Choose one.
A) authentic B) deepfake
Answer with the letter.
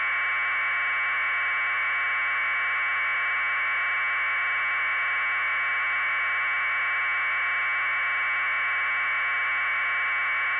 A